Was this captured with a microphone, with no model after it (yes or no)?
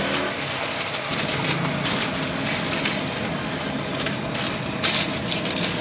yes